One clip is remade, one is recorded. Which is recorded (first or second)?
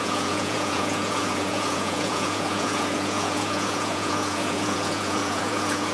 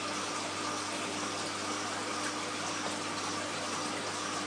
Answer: second